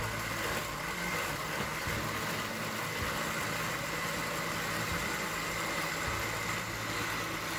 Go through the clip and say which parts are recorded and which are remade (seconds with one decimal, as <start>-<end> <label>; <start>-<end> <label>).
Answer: 0.0-0.6 recorded; 0.6-1.3 remade; 1.3-7.6 recorded